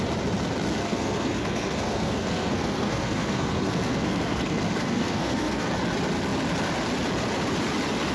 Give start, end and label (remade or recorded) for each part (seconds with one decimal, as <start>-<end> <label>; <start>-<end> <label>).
0.0-0.8 recorded; 0.8-5.7 remade; 5.7-8.1 recorded